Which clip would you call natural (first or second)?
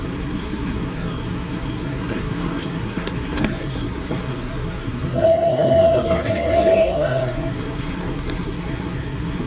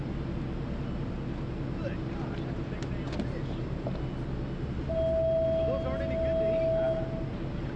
second